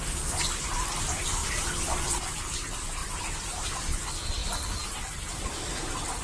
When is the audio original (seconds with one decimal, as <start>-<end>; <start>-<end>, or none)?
0.0-1.4; 2.4-3.0; 4.0-6.2